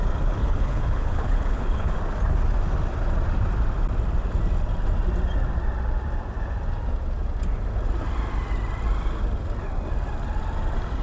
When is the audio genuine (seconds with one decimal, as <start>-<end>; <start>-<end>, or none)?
0.0-0.4; 1.9-11.0